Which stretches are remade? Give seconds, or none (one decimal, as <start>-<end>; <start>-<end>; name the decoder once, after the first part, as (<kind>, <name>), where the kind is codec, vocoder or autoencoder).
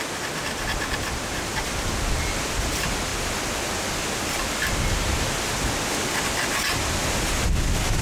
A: none